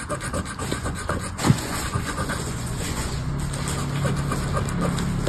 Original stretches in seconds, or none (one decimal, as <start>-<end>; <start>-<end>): 0.0-0.7; 3.3-5.3